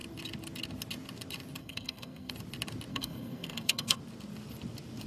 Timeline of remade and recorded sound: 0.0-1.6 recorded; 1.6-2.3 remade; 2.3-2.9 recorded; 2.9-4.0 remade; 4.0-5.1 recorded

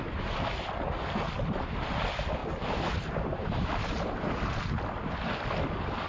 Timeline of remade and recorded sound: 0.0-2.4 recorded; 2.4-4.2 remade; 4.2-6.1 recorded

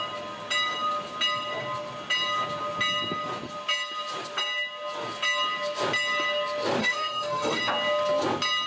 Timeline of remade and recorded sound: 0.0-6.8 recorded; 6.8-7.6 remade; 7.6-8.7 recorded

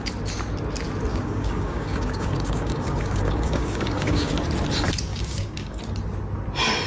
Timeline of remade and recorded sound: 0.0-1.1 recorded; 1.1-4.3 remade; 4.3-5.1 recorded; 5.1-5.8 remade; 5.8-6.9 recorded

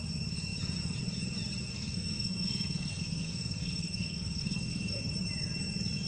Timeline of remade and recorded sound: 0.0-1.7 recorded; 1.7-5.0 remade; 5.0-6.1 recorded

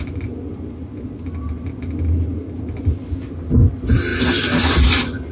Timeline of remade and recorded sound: 0.0-5.3 recorded